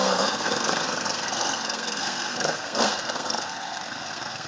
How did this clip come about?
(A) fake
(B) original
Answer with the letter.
A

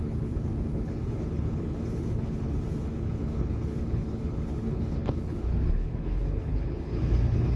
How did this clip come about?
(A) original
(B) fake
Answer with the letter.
B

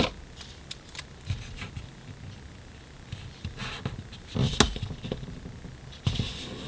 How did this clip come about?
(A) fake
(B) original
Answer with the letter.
B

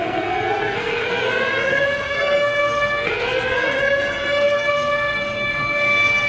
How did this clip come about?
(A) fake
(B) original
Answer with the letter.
A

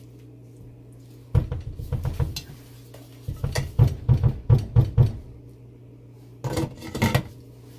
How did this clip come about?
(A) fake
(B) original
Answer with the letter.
B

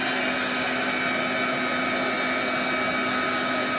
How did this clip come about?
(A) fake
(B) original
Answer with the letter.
B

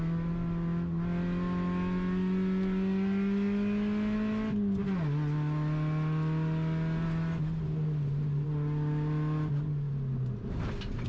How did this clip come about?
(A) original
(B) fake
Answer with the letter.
A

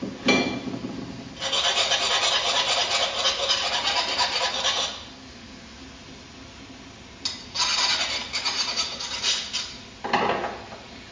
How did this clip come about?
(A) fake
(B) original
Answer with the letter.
B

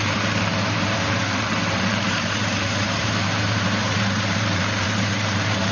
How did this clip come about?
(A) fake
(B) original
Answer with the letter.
A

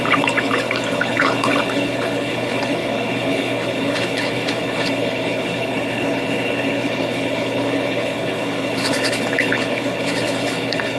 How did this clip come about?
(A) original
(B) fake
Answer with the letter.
B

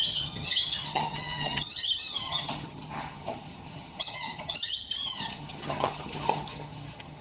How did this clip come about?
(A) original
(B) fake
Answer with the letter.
B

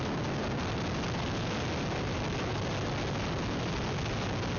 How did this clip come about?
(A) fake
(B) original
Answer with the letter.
B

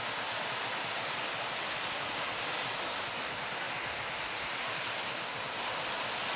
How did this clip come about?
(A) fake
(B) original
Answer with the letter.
B